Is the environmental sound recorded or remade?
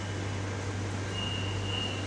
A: recorded